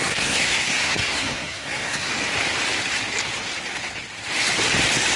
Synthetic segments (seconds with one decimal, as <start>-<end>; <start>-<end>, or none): 0.0-2.1